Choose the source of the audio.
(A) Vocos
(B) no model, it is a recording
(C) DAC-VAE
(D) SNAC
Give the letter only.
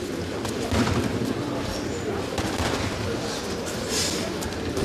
B